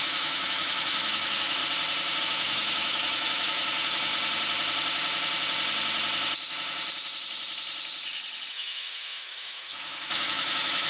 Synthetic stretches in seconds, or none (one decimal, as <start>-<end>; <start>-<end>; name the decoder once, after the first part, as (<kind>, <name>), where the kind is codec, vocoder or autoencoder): 0.0-1.6 (autoencoder, DAC-VAE); 2.2-4.1; 8.5-10.9